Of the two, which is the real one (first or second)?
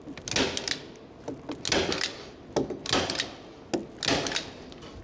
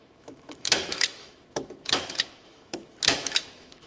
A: first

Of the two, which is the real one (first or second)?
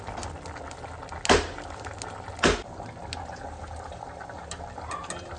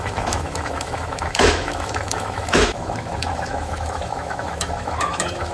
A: first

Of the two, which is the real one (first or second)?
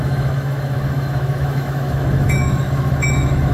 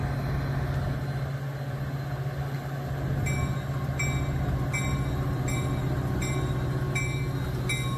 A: second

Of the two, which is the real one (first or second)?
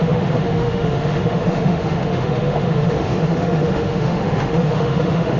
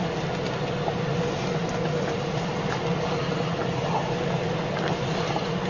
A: second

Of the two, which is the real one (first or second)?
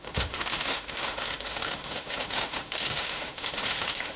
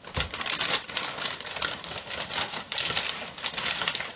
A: second